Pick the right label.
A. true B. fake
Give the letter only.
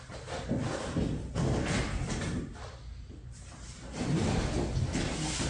A